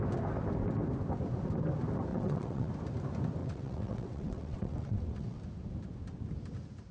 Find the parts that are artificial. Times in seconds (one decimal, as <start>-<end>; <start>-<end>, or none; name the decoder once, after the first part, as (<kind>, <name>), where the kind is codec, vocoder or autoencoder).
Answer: 2.1-2.7 (vocoder, WaveNeXt); 3.4-5.4